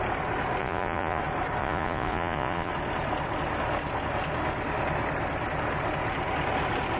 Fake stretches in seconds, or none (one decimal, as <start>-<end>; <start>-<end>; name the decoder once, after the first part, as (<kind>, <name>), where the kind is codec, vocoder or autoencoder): 0.6-1.2 (vocoder, Vocos); 1.6-2.7

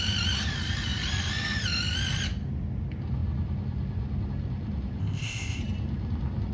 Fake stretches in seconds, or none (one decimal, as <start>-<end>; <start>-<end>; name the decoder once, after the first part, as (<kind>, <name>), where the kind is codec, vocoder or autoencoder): 5.0-5.6 (codec, ZipCodec)

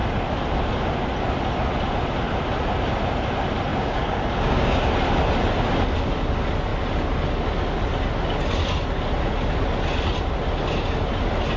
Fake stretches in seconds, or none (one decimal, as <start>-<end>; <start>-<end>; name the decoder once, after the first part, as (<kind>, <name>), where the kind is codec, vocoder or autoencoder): 3.7-4.9 (codec, DAC)

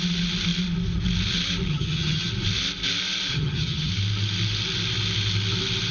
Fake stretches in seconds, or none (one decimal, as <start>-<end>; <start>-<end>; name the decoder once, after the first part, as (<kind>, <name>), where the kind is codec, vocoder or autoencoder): 1.7-2.3 (vocoder, HiFi-GAN); 3.3-3.9